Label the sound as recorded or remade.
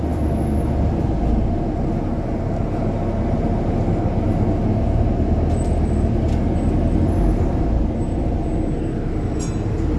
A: recorded